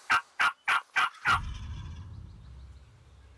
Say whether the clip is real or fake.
real